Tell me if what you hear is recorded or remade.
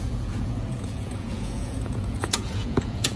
remade